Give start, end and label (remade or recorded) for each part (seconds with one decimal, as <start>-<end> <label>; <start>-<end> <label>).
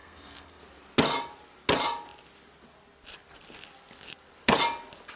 0.0-0.6 remade; 0.6-5.2 recorded